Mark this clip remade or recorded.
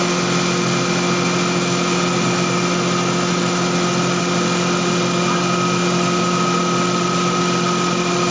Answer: recorded